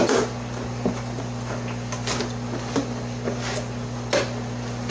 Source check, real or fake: real